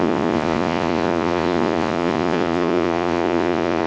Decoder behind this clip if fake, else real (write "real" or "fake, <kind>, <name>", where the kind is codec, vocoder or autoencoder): fake, vocoder, Vocos